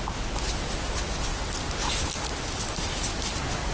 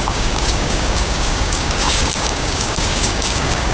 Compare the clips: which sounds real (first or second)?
first